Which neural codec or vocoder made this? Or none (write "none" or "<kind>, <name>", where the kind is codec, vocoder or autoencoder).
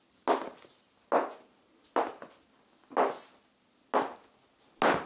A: none